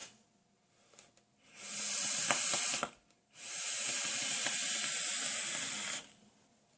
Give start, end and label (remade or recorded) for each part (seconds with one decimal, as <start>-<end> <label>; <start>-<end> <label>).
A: 0.0-6.8 recorded